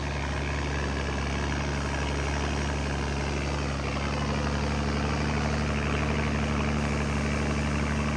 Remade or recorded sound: recorded